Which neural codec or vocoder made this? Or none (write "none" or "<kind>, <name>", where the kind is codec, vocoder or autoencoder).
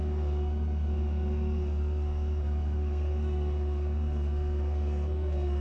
codec, SNAC